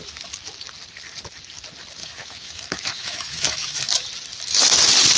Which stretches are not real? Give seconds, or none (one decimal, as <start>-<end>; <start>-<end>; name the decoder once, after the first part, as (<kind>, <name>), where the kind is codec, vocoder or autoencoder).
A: 2.0-3.9 (autoencoder, DAC-VAE)